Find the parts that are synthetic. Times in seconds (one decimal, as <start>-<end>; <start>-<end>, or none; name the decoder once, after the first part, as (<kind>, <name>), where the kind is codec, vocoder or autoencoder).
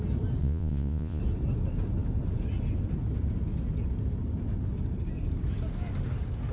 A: 0.4-1.2 (vocoder, Vocos)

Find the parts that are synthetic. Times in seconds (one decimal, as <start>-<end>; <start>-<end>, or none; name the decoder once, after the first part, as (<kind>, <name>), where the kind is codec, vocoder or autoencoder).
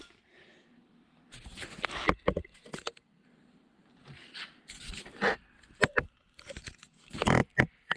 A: 0.0-0.8 (vocoder, BigVGAN v2); 2.4-8.0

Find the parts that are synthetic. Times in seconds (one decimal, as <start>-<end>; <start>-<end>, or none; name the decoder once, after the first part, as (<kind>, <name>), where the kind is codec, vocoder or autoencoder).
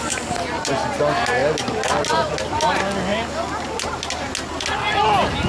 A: none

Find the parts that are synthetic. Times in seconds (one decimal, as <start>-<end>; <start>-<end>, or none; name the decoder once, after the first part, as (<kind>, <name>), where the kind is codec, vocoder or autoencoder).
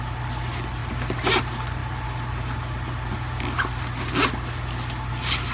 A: none